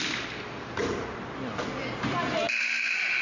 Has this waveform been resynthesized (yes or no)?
no